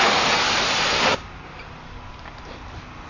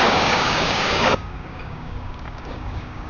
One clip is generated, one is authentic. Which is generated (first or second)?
second